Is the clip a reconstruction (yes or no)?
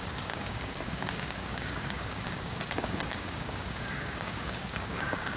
yes